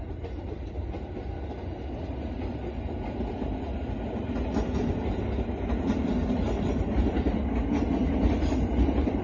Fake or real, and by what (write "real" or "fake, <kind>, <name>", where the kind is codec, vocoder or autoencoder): real